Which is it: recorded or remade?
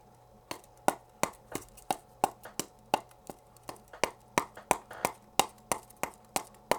recorded